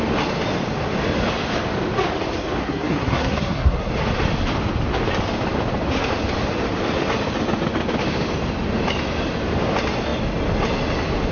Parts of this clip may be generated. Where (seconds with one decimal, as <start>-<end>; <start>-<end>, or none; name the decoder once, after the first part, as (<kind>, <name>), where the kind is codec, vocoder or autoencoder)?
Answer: 2.6-3.9 (codec, SNAC)